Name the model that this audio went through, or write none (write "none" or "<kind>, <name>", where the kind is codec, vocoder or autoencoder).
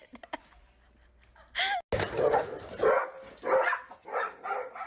none